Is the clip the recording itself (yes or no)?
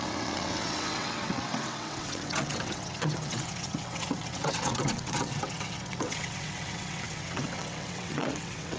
no